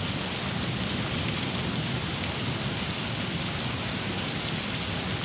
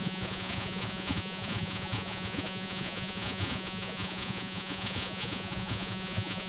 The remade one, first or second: second